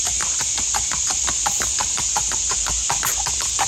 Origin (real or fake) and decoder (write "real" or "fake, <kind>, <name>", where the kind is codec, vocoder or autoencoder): real